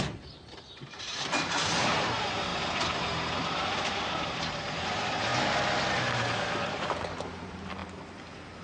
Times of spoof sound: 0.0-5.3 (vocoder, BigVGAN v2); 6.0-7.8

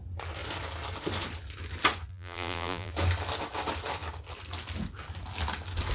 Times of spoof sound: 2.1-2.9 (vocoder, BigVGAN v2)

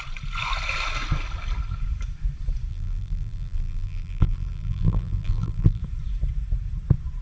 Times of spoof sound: 2.7-5.8 (vocoder, BigVGAN v2)